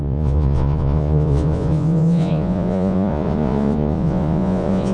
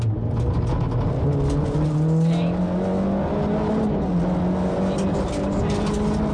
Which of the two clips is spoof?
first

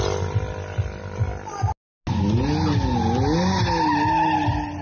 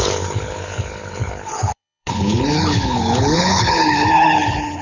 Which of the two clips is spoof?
second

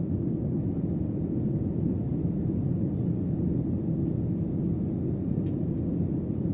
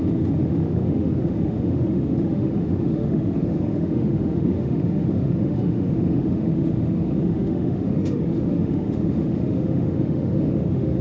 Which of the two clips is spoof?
second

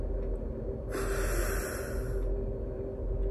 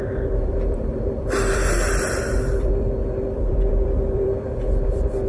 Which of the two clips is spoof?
second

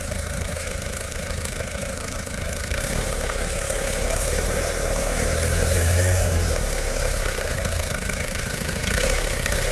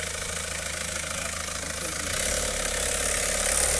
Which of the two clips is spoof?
first